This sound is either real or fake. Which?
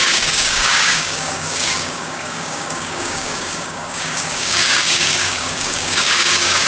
fake